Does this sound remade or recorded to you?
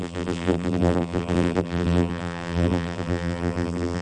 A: remade